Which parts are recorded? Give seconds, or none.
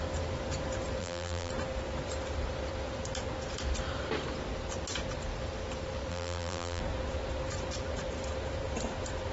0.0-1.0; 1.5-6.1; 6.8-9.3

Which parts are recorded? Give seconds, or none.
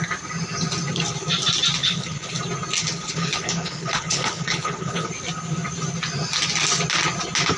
0.0-1.8; 2.4-2.8; 5.1-7.6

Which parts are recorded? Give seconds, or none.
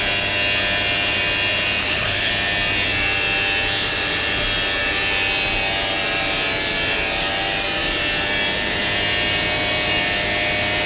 0.0-1.8; 2.3-10.9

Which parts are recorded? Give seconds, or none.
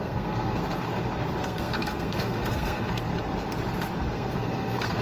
0.6-1.4; 3.1-4.1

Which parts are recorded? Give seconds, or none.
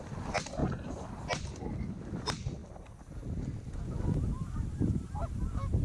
0.0-2.6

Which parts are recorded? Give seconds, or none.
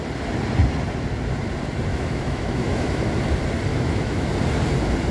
0.0-1.9; 3.1-3.7; 4.3-5.1